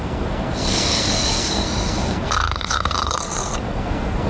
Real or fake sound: fake